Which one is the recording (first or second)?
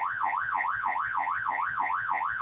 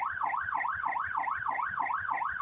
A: second